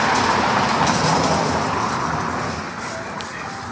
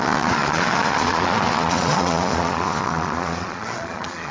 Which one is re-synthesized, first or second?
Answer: second